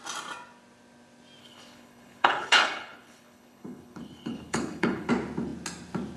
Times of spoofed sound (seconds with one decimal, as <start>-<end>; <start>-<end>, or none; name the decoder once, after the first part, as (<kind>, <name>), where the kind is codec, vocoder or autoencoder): 1.4-5.1 (codec, HILCodec)